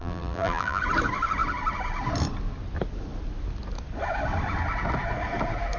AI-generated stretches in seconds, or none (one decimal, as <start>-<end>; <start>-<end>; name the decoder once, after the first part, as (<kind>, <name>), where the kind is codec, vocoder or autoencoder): 0.0-0.8 (vocoder, BigVGAN v2)